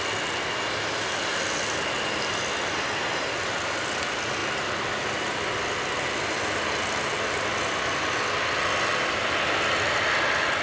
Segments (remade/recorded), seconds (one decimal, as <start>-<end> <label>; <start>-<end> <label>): 0.0-10.6 recorded